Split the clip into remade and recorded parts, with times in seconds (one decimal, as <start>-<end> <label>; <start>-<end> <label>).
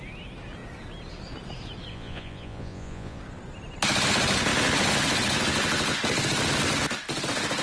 0.0-1.9 recorded; 1.9-3.2 remade; 3.2-7.6 recorded